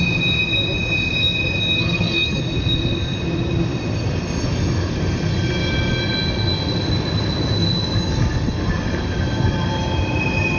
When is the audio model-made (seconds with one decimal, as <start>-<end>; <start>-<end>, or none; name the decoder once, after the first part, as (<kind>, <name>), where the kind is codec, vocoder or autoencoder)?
1.8-2.4 (codec, SNAC)

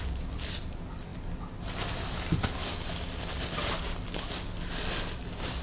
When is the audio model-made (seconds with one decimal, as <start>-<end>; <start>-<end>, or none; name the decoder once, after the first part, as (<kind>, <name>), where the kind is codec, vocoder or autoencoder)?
none